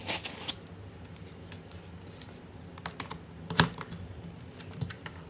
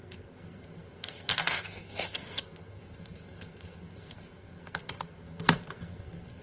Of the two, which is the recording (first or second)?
first